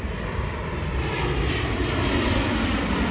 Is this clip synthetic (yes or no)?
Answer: no